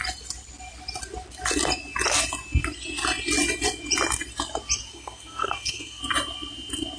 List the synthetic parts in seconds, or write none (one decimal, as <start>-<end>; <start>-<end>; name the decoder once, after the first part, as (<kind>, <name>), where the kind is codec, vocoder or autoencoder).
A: 4.9-6.0 (codec, SNAC)